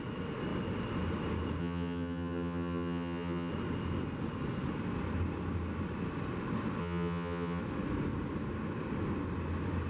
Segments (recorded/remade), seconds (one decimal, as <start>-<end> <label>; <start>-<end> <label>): 0.0-1.6 recorded; 1.6-3.5 remade; 3.5-6.8 recorded; 6.8-7.6 remade; 7.6-9.9 recorded